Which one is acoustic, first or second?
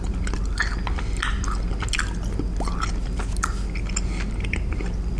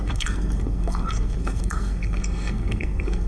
first